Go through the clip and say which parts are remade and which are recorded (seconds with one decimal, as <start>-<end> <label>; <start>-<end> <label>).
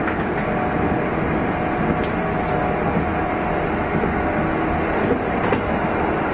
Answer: 0.0-6.3 recorded